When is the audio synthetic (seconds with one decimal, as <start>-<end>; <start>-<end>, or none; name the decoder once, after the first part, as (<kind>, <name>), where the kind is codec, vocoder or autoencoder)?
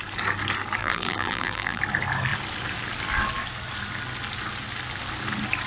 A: 0.8-1.8 (vocoder, BigVGAN v2)